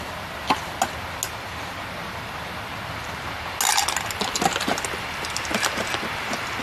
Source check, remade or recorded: recorded